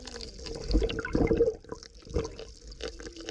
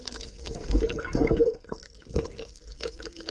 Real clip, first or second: first